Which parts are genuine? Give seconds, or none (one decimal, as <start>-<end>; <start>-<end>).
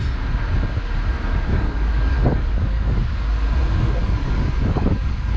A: 0.0-1.5; 3.0-4.0